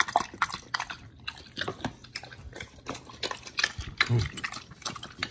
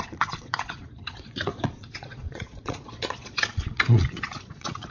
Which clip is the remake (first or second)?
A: second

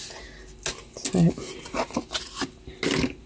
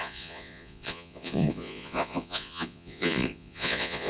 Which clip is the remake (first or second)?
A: second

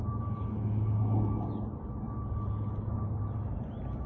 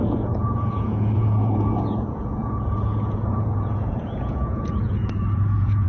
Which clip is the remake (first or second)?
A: second